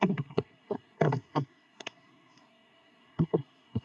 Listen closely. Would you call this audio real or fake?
fake